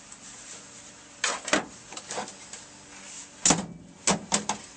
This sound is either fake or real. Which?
real